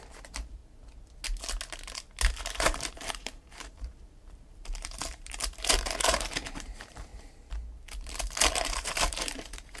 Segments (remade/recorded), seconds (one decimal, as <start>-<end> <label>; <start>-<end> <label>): 0.0-0.6 remade; 0.6-2.4 recorded; 2.4-7.1 remade; 7.1-8.5 recorded; 8.5-9.8 remade